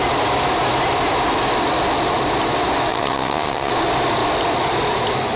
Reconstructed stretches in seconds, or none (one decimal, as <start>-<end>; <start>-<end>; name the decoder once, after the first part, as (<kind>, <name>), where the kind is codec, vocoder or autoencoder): 2.9-3.7 (vocoder, Vocos)